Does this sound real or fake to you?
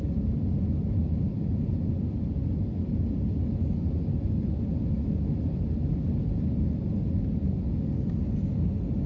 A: real